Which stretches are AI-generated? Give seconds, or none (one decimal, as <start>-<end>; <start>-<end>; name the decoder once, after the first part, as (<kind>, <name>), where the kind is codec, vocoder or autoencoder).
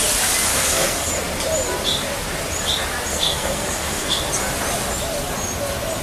0.5-1.1 (codec, SNAC); 3.1-4.2